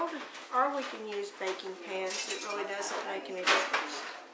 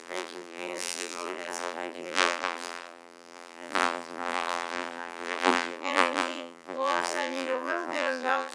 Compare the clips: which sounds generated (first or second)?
second